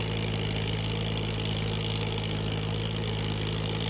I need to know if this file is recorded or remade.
recorded